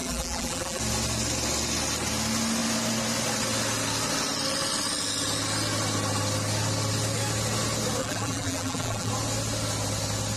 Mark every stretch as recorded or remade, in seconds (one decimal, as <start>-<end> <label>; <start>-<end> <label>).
0.0-0.8 remade; 0.8-8.0 recorded; 8.0-9.1 remade; 9.1-10.4 recorded